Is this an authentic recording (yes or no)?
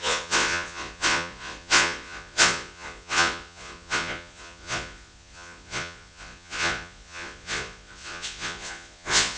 no